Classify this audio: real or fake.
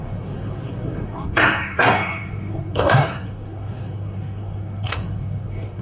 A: fake